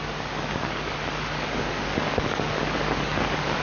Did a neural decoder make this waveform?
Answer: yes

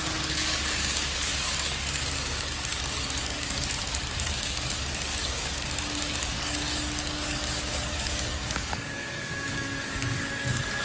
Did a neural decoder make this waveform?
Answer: yes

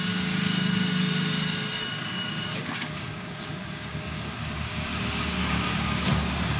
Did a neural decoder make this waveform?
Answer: yes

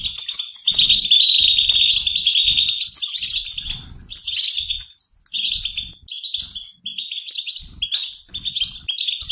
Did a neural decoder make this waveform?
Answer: no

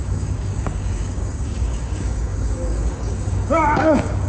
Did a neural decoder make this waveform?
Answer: yes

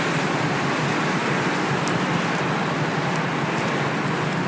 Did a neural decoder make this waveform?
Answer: no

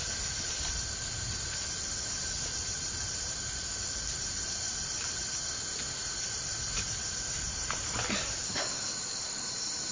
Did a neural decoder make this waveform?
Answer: no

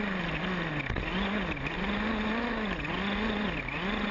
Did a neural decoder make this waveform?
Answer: no